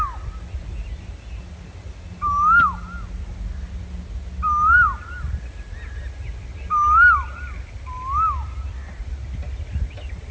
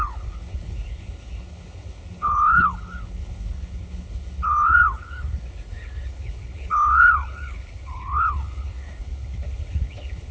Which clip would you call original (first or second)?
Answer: first